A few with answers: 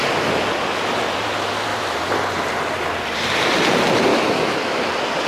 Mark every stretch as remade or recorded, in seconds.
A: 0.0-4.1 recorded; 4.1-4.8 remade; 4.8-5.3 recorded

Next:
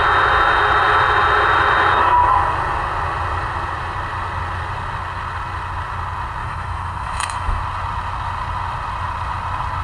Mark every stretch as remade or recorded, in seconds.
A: 0.0-6.4 recorded; 6.4-7.6 remade; 7.6-9.8 recorded

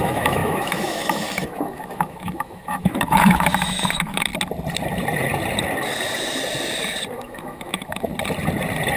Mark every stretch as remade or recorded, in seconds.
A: 0.0-4.3 remade; 4.3-7.1 recorded; 7.1-8.1 remade; 8.1-9.0 recorded